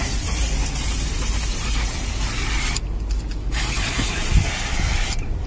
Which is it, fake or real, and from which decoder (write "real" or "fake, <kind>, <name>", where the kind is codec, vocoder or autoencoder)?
real